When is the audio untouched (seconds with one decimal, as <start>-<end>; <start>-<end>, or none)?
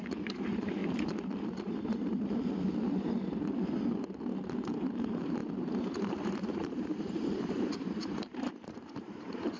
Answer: 0.8-1.6; 2.1-4.7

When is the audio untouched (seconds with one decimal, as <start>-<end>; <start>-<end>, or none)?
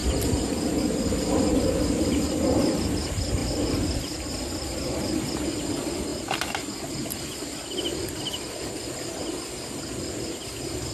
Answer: 0.8-3.4; 4.0-7.9; 8.5-10.9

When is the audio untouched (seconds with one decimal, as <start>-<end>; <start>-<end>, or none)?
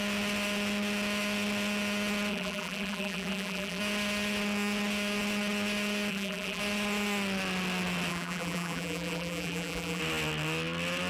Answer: 0.0-2.3; 3.8-6.1; 6.6-8.1; 10.0-11.1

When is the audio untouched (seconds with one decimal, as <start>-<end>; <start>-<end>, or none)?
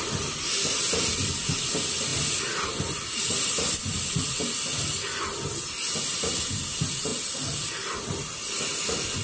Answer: 0.0-9.2